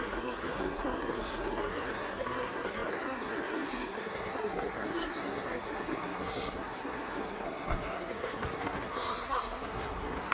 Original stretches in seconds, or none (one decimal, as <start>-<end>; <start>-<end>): none